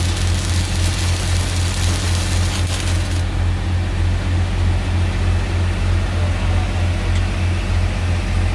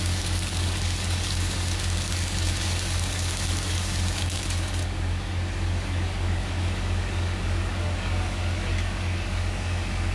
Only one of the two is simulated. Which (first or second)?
second